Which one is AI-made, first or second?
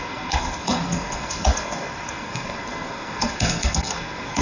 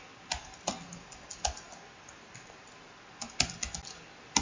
first